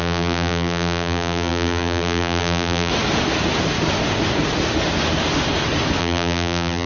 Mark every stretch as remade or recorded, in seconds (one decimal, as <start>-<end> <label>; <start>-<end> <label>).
0.0-2.9 remade; 2.9-6.0 recorded; 6.0-6.9 remade

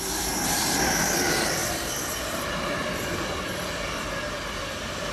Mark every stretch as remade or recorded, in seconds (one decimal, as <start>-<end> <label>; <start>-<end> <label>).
0.0-5.1 recorded